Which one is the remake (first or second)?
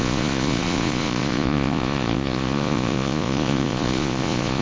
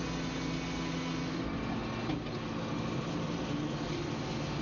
first